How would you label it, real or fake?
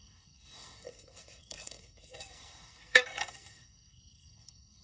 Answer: fake